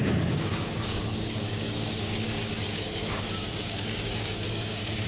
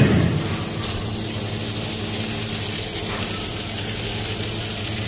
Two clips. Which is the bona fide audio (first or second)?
second